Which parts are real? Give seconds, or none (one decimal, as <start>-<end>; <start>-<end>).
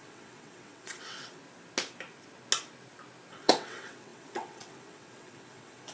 1.4-3.3